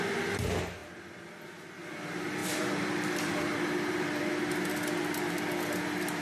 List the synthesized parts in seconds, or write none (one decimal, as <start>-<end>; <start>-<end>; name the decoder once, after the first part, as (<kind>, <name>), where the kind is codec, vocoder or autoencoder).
2.4-4.5 (vocoder, BigVGAN v2)